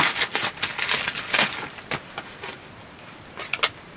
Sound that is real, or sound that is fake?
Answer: real